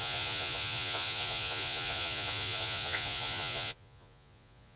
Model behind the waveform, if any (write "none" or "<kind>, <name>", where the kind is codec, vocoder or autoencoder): vocoder, Vocos